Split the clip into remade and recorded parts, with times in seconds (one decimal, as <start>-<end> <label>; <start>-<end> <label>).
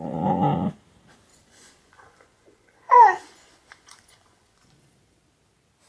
0.0-1.3 recorded; 1.3-4.8 remade; 4.8-5.9 recorded